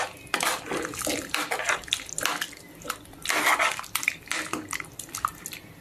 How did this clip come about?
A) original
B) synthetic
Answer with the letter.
B